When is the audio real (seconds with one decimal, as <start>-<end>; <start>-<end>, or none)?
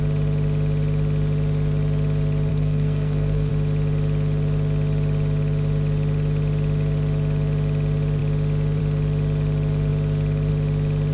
0.0-2.5; 3.5-11.1